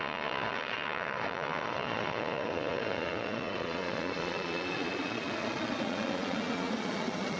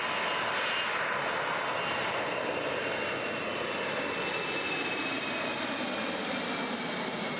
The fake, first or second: first